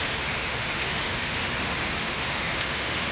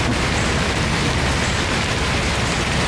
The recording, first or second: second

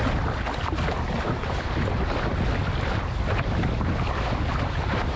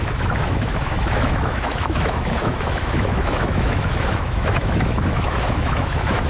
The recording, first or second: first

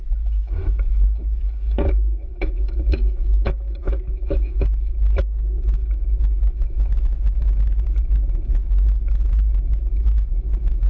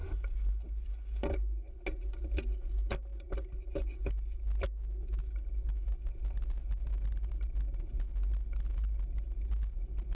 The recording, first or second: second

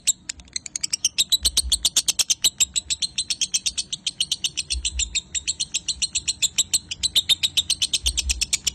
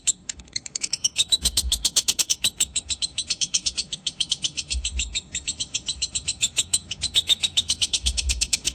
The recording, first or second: first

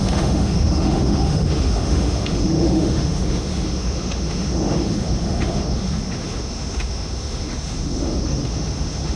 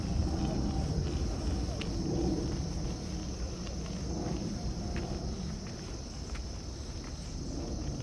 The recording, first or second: second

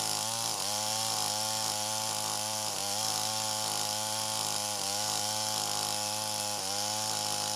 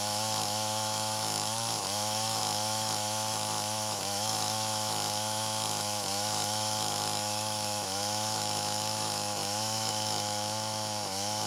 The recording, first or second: first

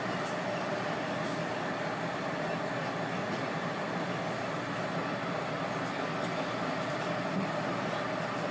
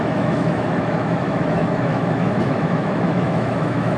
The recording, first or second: first